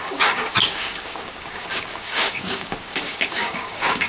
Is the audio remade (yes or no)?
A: yes